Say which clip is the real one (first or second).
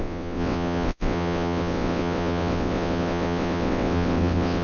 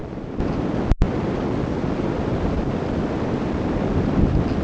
second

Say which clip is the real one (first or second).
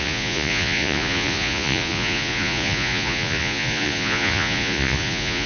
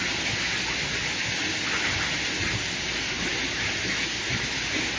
second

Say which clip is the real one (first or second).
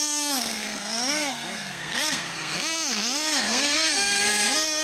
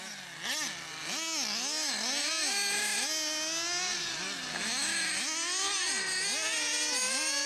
second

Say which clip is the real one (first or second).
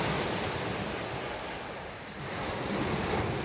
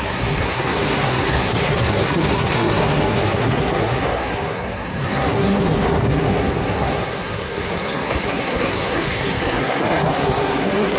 first